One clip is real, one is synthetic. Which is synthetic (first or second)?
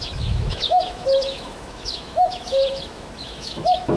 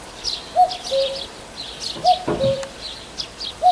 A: first